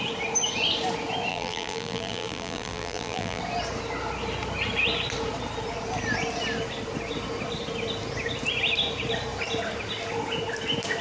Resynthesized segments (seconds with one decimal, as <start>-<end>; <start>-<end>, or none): 1.3-3.4